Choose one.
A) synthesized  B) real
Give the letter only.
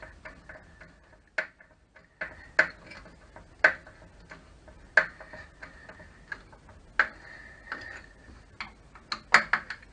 B